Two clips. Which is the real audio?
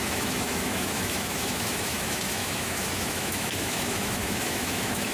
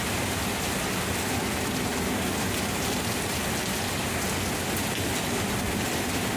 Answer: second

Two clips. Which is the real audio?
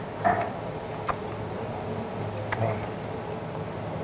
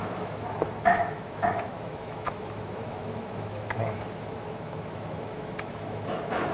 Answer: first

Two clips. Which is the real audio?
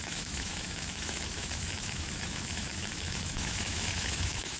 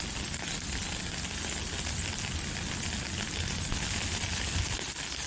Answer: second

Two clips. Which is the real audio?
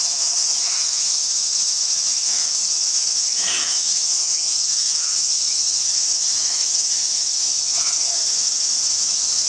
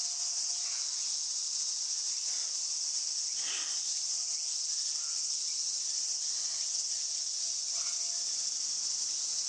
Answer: second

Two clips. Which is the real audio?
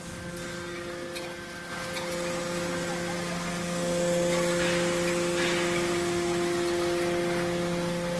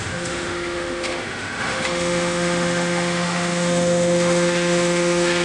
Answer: first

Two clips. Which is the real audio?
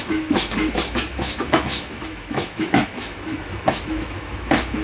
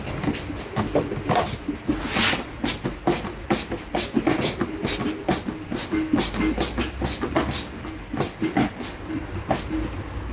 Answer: second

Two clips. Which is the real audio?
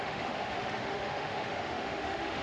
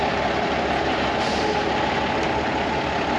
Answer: second